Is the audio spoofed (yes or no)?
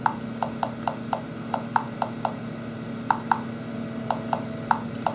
no